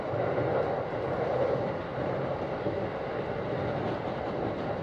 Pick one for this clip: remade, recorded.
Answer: recorded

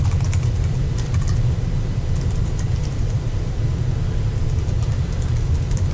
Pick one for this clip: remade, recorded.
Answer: remade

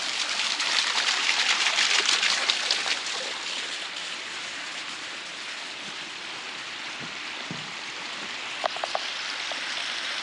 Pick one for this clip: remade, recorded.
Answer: remade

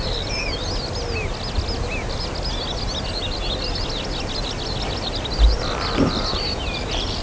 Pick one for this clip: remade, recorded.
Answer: recorded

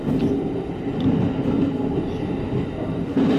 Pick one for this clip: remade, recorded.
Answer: recorded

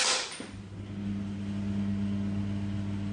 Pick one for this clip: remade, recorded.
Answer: recorded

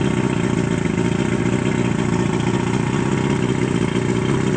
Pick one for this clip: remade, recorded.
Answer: recorded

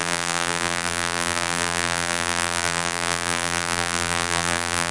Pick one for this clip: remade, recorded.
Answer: remade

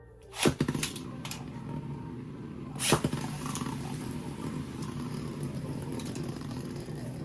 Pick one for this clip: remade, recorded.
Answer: remade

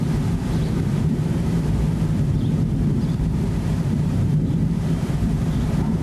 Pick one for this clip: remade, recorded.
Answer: remade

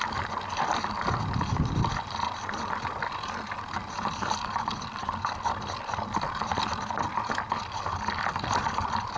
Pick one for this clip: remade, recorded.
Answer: recorded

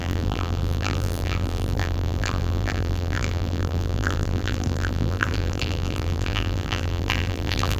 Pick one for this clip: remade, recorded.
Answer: remade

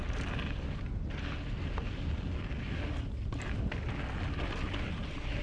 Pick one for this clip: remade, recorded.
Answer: recorded